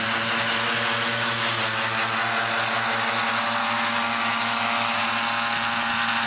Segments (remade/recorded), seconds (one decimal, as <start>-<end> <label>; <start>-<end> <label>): 0.0-1.1 recorded; 1.1-1.6 remade; 1.6-3.6 recorded; 3.6-5.0 remade; 5.0-6.3 recorded